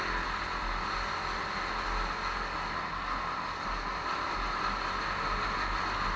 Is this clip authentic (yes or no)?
yes